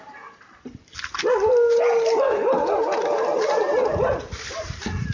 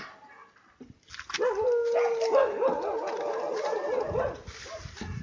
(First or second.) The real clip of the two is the second